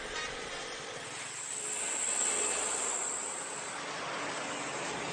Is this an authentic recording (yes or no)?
yes